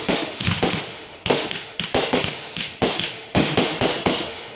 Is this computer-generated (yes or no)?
yes